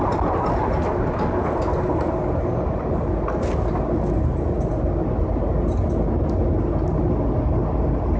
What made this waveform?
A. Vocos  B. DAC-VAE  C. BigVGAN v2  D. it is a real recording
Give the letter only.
D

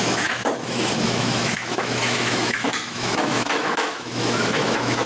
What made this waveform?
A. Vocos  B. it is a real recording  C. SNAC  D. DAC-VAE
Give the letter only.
D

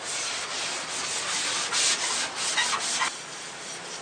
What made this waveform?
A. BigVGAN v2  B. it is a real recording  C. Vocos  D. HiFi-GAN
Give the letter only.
B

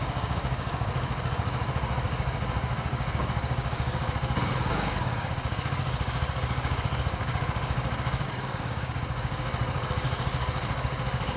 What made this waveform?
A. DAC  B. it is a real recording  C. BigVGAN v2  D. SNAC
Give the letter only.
A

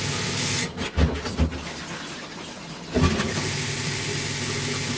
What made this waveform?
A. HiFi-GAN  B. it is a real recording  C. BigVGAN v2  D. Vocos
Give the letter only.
B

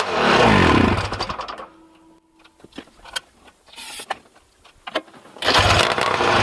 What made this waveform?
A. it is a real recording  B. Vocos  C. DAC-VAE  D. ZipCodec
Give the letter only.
A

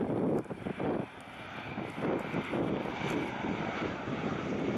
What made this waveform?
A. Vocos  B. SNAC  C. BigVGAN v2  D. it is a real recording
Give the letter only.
D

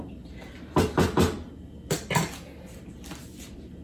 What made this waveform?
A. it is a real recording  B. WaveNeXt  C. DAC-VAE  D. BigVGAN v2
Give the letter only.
A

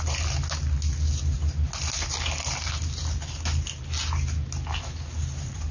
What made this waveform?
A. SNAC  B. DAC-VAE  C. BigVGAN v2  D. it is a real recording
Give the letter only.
D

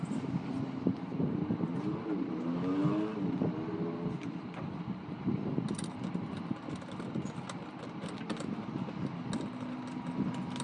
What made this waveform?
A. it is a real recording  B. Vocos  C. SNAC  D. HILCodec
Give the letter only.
A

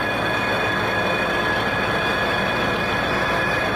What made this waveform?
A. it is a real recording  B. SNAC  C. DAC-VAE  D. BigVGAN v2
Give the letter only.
A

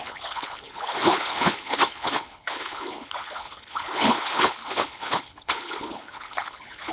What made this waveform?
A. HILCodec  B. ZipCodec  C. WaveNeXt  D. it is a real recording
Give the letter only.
A